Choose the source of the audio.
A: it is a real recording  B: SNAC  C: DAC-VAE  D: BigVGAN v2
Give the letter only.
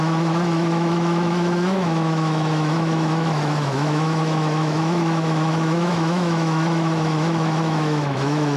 C